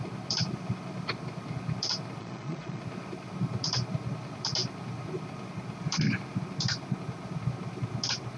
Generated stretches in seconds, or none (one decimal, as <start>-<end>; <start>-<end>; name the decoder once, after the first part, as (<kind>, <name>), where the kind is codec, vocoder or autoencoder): 2.2-2.8 (vocoder, Vocos)